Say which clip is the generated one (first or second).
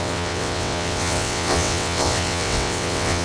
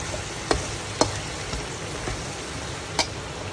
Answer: first